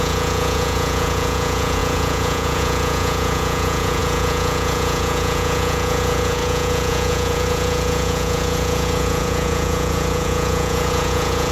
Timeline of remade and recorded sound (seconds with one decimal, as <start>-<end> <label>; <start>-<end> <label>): 0.0-11.5 remade